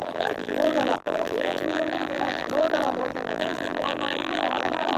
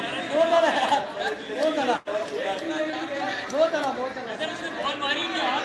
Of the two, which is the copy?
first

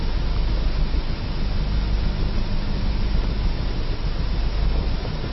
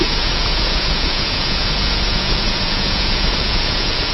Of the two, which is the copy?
second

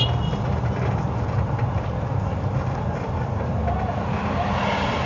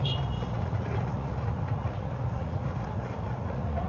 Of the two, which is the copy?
second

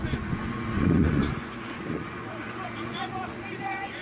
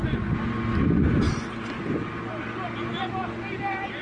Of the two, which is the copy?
first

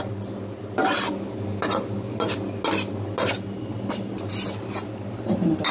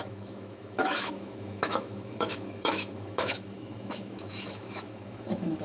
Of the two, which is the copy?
second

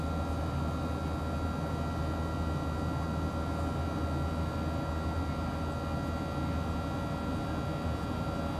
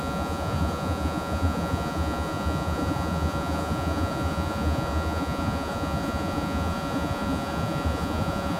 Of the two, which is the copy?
second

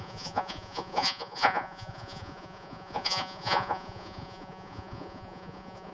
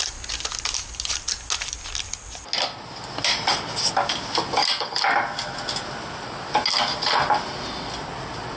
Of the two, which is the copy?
first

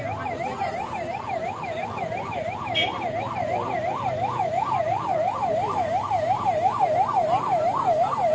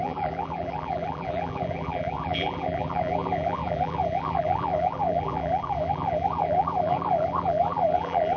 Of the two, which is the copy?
second